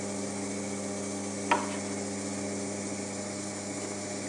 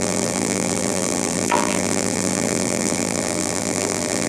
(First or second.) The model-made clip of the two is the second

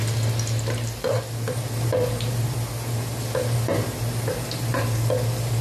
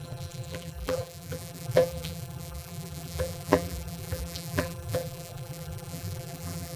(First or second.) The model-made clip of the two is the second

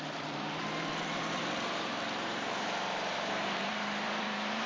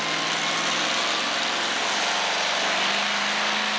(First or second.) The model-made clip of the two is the first